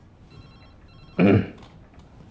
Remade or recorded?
recorded